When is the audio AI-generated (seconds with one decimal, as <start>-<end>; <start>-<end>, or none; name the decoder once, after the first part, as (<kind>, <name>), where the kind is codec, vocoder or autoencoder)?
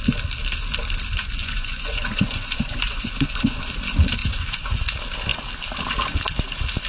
1.4-3.6 (vocoder, Vocos); 4.2-4.8